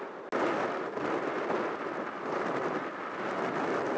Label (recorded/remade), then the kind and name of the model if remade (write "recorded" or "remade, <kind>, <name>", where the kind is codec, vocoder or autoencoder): recorded